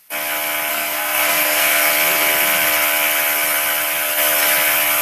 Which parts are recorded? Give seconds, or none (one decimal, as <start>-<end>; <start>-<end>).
0.0-0.7; 1.9-5.0

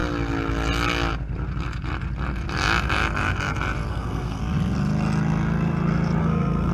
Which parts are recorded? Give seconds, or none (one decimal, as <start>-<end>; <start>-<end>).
0.0-3.9; 4.4-6.2

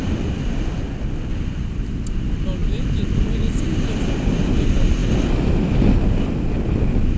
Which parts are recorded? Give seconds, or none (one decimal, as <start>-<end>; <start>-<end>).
0.0-7.2

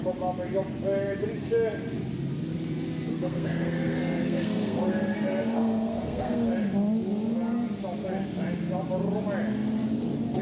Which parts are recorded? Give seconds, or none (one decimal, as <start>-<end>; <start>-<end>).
0.0-3.1; 6.5-10.4

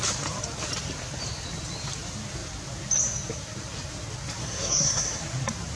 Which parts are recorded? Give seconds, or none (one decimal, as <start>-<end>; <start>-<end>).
0.0-4.4; 5.2-5.8

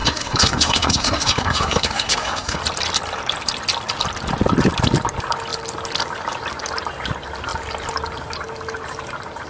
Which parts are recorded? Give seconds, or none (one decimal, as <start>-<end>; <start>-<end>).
2.6-9.5

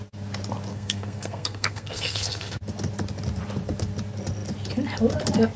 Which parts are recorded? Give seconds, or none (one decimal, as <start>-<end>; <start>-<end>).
0.0-0.7; 2.6-5.6

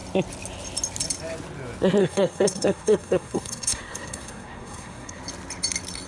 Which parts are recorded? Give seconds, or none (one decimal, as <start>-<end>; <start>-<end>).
0.0-2.0; 5.2-6.1